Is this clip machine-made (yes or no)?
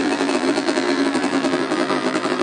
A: yes